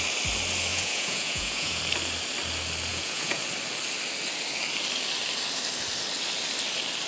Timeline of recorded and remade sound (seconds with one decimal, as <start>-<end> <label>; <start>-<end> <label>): 0.0-0.7 recorded; 0.7-1.8 remade; 1.8-2.9 recorded; 2.9-3.4 remade; 3.4-7.1 recorded